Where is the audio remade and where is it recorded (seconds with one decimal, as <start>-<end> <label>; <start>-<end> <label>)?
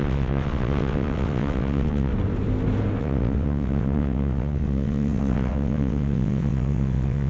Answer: 0.0-2.1 remade; 2.1-3.0 recorded; 3.0-7.3 remade